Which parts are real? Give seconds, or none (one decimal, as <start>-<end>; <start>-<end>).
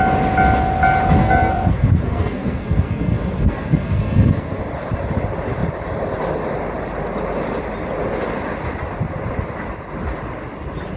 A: 0.0-1.2; 4.6-11.0